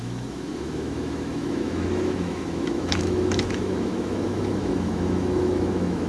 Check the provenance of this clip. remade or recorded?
remade